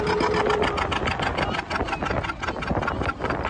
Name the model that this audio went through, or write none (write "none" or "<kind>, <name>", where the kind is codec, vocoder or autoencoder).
none